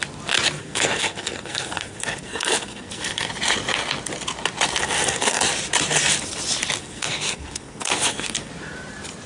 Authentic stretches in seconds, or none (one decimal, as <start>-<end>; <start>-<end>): 0.0-0.6; 3.3-4.8; 5.4-6.8; 8.5-9.3